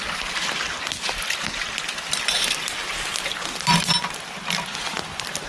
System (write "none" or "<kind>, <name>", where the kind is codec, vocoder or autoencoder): none